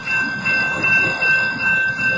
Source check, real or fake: real